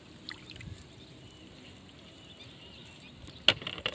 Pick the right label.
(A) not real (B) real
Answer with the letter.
B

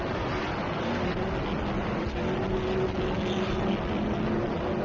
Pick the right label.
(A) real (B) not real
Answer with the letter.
A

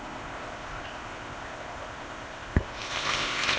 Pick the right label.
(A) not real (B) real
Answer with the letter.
A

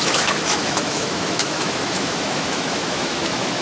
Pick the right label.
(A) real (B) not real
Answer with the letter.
B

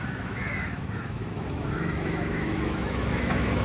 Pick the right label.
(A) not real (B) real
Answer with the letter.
A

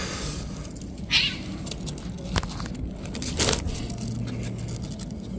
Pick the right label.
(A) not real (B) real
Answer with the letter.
B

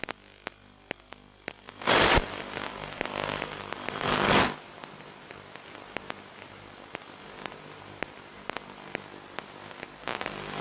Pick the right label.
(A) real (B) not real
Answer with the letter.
A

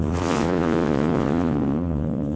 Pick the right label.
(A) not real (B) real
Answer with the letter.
A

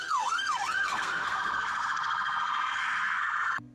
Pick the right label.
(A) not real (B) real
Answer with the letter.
A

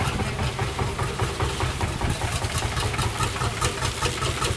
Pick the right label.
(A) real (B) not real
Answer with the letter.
A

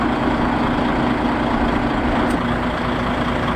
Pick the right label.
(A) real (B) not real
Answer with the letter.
A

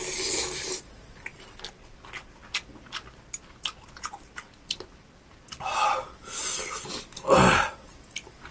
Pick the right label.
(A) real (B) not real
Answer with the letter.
A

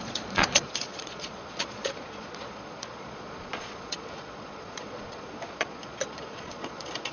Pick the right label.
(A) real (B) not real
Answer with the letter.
B